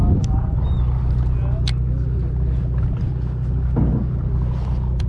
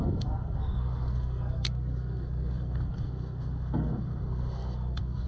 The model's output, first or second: second